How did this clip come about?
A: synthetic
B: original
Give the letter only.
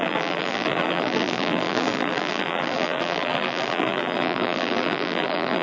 A